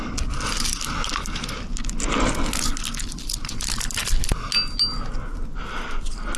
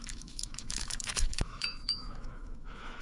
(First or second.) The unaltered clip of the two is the first